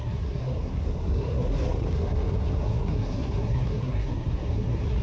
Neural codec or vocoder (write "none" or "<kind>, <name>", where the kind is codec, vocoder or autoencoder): codec, SNAC